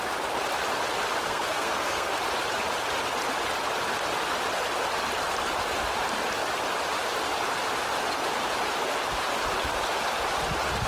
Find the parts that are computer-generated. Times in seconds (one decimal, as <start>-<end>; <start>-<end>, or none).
1.2-2.1